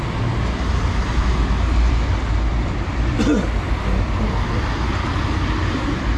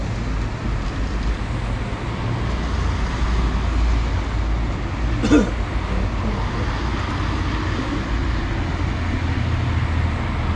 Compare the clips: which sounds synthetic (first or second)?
first